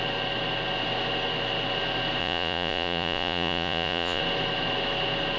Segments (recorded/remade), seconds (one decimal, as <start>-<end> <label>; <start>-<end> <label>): 0.0-2.2 recorded; 2.2-4.2 remade; 4.2-5.4 recorded